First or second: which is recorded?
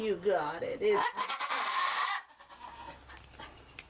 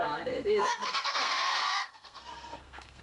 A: first